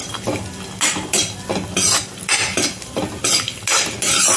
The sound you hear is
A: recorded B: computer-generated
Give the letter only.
A